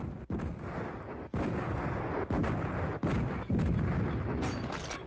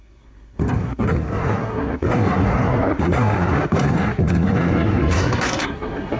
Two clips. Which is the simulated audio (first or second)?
second